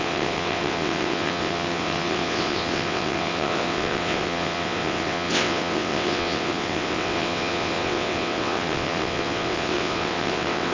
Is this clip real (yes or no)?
no